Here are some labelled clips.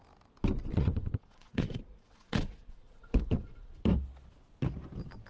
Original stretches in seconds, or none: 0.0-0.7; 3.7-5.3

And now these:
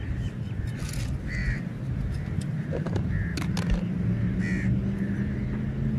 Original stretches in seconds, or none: 0.0-6.0

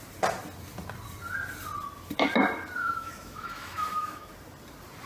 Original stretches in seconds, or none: 0.0-2.8; 4.3-5.1